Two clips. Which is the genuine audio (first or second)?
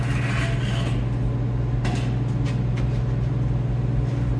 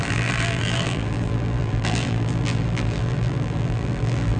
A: first